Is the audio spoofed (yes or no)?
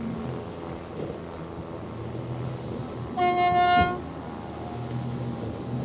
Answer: no